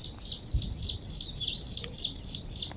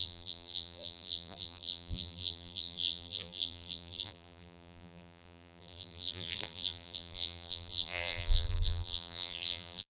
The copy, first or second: second